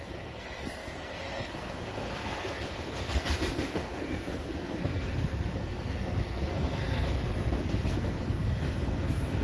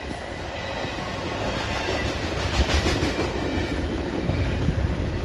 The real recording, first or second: second